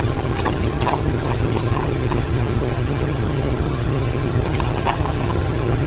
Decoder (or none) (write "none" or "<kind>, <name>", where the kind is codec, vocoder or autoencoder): vocoder, HiFi-GAN